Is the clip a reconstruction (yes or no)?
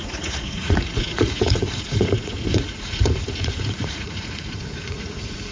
yes